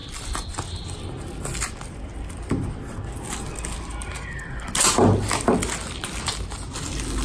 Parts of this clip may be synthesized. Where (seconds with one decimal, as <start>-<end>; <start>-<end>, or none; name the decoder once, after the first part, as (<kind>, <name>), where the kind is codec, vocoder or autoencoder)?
none